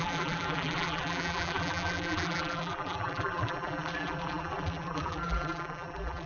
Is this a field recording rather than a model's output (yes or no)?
no